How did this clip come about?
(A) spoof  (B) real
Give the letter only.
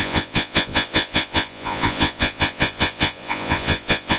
A